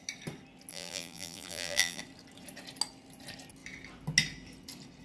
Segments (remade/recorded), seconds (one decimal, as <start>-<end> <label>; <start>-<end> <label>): 0.0-0.7 recorded; 0.7-2.0 remade; 2.0-5.0 recorded

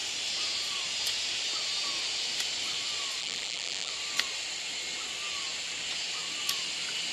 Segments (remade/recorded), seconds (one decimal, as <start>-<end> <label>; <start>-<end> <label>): 0.0-3.2 recorded; 3.2-3.9 remade; 3.9-7.1 recorded

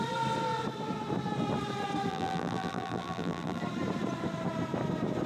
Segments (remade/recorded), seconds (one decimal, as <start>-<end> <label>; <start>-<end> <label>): 0.0-2.1 recorded; 2.1-3.6 remade; 3.6-5.3 recorded

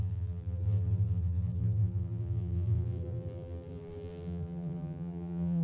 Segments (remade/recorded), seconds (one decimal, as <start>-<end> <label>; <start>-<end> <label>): 0.0-5.6 remade

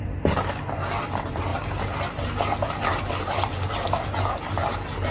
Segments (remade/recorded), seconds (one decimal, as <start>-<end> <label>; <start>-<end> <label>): 0.0-5.1 recorded

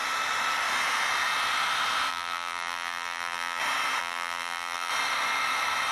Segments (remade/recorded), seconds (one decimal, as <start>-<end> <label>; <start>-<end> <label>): 0.0-2.1 recorded; 2.1-3.6 remade; 3.6-4.0 recorded; 4.0-4.9 remade; 4.9-5.9 recorded

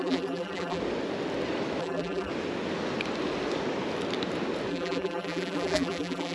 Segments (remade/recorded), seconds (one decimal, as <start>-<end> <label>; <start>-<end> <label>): 0.0-0.8 remade; 0.8-1.8 recorded; 1.8-2.3 remade; 2.3-4.7 recorded; 4.7-6.3 remade